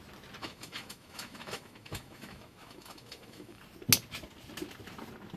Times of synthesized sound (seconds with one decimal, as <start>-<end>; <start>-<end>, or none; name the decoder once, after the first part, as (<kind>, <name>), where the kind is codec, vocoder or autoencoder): 0.4-3.6 (autoencoder, DAC-VAE)

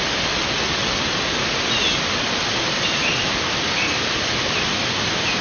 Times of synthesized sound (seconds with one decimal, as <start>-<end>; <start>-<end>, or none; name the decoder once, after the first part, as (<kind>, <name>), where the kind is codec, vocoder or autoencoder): none

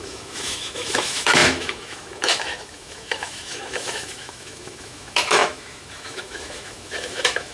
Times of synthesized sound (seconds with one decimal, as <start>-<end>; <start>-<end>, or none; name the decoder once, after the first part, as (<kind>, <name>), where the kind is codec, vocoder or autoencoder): 0.0-7.5 (autoencoder, DAC-VAE)

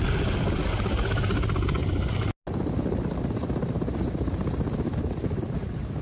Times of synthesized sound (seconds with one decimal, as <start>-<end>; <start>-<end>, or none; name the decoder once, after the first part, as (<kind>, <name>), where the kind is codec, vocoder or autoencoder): none

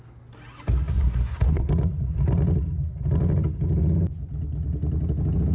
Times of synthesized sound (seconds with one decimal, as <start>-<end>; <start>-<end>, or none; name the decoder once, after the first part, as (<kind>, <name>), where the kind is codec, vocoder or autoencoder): 0.9-1.7 (codec, SNAC)

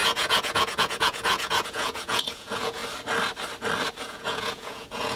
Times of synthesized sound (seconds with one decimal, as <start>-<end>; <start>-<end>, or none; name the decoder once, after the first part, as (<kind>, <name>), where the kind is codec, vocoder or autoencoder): 0.0-2.8 (vocoder, Vocos); 4.0-5.2